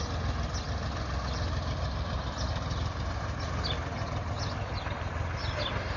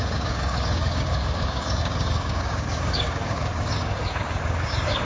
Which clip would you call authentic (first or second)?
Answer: first